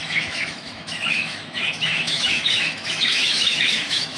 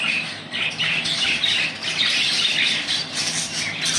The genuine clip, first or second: second